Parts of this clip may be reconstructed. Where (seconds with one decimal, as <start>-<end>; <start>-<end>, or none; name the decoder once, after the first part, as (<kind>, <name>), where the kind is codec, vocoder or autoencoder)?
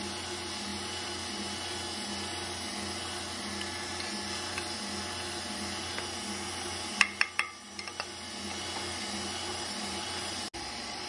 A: 9.5-10.5 (vocoder, BigVGAN v2)